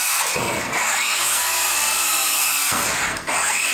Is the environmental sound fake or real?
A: fake